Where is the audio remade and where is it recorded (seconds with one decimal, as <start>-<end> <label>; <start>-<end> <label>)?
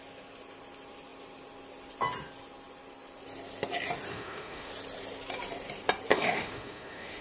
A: 0.0-4.1 recorded; 4.1-4.7 remade; 4.7-6.1 recorded; 6.1-7.2 remade